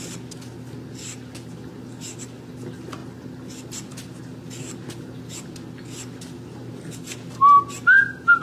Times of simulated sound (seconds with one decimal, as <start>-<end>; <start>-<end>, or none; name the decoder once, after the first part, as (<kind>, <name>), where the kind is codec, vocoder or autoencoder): none